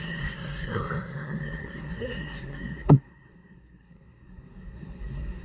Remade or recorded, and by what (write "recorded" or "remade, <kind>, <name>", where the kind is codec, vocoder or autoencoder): remade, codec, SNAC